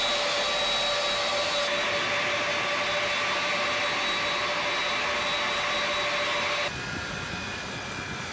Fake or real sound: real